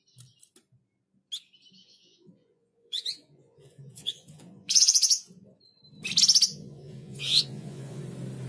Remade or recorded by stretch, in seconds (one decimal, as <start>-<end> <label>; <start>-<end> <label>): 0.0-1.8 recorded; 1.8-5.6 remade; 5.6-6.5 recorded; 6.5-8.0 remade; 8.0-8.5 recorded